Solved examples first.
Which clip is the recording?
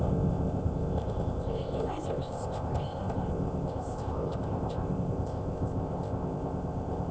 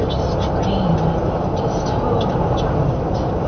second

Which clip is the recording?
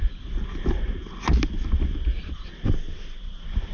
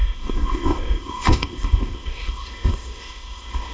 first